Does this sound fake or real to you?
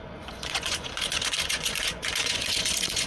fake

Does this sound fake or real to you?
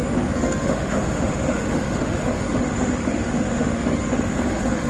fake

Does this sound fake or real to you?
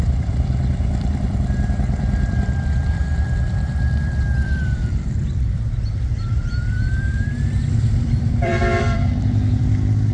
fake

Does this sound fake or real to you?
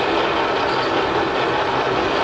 real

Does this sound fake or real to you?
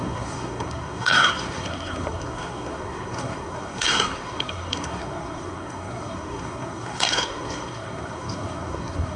fake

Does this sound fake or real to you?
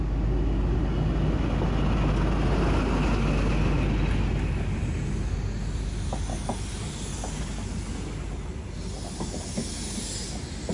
real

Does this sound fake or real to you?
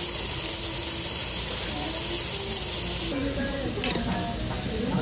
real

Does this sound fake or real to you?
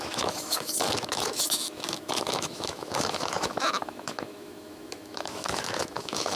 fake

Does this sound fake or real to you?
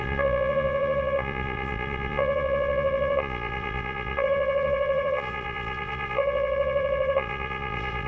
fake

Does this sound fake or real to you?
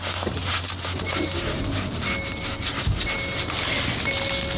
real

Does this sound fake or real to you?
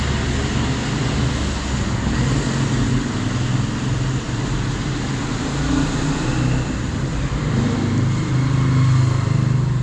real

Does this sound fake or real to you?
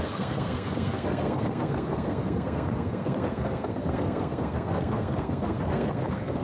fake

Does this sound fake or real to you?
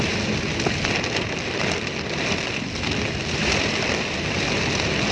real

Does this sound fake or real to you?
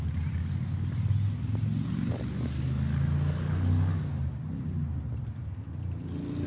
real